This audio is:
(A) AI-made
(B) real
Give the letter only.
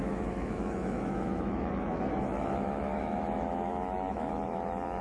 A